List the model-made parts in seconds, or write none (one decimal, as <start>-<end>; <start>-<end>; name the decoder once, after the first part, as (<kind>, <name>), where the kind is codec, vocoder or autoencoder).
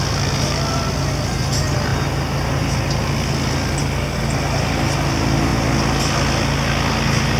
none